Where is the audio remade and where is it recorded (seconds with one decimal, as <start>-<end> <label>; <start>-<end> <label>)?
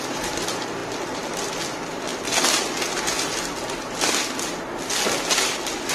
0.0-5.9 recorded